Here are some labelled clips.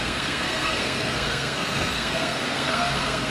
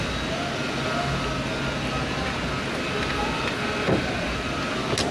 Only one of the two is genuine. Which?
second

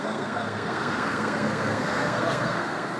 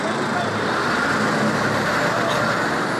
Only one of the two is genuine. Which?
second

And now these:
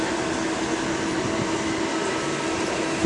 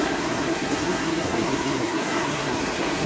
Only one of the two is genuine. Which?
first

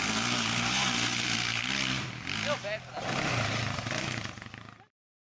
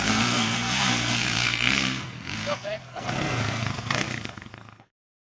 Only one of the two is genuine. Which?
first